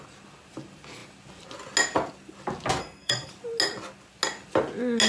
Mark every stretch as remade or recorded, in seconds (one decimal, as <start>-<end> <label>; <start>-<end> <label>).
0.0-2.8 recorded; 2.8-3.3 remade; 3.3-5.1 recorded